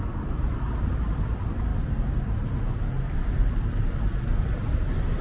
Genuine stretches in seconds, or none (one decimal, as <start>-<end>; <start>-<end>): 0.0-5.2